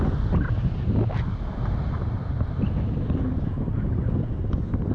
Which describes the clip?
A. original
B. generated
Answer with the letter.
A